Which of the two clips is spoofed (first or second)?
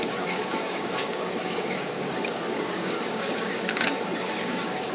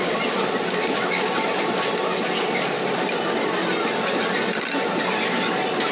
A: first